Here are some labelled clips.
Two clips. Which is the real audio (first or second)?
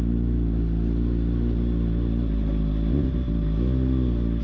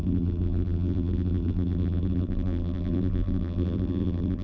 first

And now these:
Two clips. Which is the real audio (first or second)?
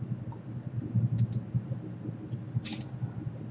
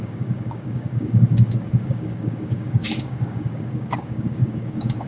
first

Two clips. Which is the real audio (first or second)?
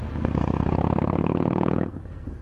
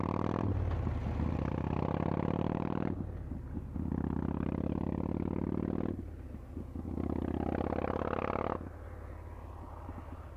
second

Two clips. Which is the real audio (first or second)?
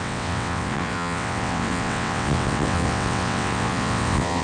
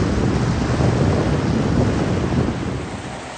second